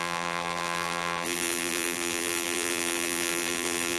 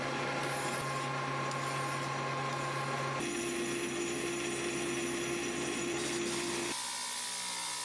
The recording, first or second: second